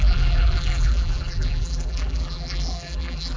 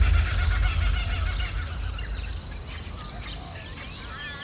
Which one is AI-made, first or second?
first